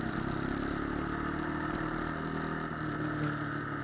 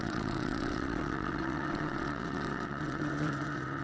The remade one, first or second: second